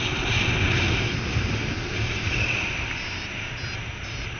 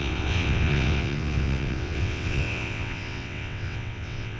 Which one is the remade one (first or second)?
second